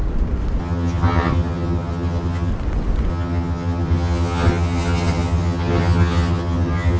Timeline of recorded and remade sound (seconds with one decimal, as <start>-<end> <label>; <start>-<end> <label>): 0.0-0.6 recorded; 0.6-2.5 remade; 2.5-3.1 recorded; 3.1-7.0 remade

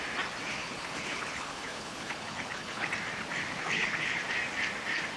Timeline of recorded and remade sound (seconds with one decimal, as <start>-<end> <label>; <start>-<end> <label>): 0.0-0.6 recorded; 0.6-2.9 remade; 2.9-3.6 recorded; 3.6-4.2 remade; 4.2-5.2 recorded

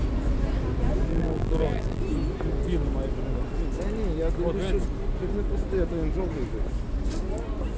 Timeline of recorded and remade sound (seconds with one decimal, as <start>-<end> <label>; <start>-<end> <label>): 0.0-1.1 recorded; 1.1-2.0 remade; 2.0-7.8 recorded

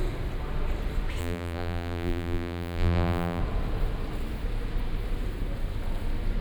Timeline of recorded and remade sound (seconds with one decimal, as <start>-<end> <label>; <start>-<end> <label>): 0.0-1.2 recorded; 1.2-3.4 remade; 3.4-6.4 recorded